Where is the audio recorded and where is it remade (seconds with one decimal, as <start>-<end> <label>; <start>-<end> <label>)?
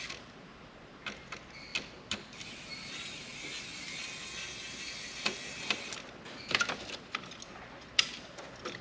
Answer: 0.0-8.8 recorded